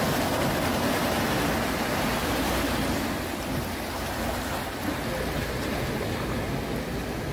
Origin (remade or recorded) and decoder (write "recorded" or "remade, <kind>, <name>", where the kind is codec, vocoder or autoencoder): recorded